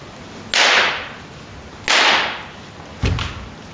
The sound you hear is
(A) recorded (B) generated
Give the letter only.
A